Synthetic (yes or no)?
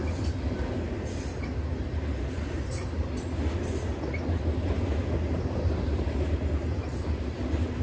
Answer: no